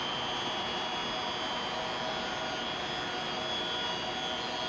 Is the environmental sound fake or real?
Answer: real